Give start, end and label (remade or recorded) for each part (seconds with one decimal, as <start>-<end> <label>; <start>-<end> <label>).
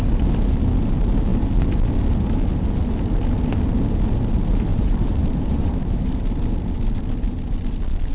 0.0-4.7 recorded; 4.7-6.2 remade; 6.2-8.1 recorded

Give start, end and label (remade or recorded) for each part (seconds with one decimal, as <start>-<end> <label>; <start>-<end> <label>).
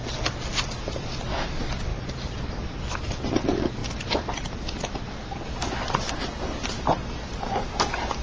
0.0-1.9 recorded; 1.9-2.8 remade; 2.8-8.2 recorded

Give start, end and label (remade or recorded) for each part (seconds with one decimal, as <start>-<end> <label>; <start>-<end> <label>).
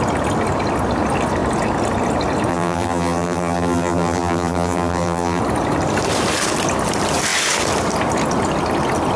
0.0-2.5 recorded; 2.5-5.4 remade; 5.4-9.2 recorded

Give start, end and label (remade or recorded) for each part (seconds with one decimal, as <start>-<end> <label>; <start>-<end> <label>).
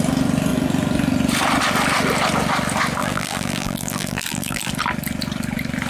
0.0-3.0 recorded; 3.0-4.7 remade; 4.7-5.9 recorded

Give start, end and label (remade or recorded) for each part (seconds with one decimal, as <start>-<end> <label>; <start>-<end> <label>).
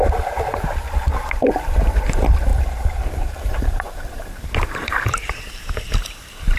0.0-2.5 recorded; 2.5-6.6 remade